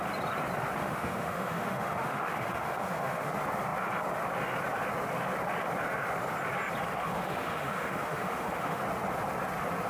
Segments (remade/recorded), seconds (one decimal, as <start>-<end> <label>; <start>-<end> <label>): 0.0-0.8 recorded; 0.8-3.3 remade; 3.3-7.0 recorded; 7.0-8.8 remade; 8.8-9.9 recorded

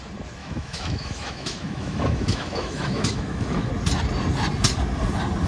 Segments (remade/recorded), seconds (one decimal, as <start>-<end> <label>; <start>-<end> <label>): 0.0-0.4 recorded; 0.4-3.7 remade; 3.7-5.5 recorded

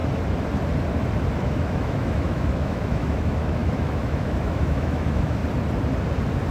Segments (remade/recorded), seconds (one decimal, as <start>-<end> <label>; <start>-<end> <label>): 0.0-1.3 recorded; 1.3-5.4 remade; 5.4-6.5 recorded

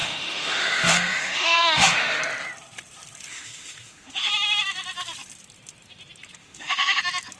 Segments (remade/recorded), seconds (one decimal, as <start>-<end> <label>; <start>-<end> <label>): 0.0-2.2 remade; 2.2-3.3 recorded; 3.3-4.3 remade; 4.3-6.4 recorded; 6.4-7.0 remade; 7.0-7.4 recorded

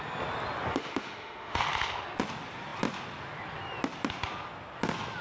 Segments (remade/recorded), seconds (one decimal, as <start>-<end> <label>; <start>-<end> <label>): 0.0-0.7 recorded; 0.7-1.6 remade; 1.6-5.2 recorded

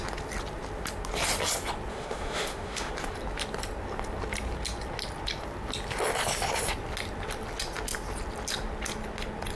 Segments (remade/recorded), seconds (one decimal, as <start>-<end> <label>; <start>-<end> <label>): 0.0-1.9 recorded; 1.9-2.9 remade; 2.9-9.6 recorded